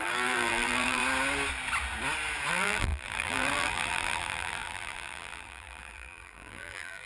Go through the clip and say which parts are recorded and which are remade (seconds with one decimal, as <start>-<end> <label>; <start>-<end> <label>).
0.0-1.0 remade; 1.0-2.5 recorded; 2.5-7.1 remade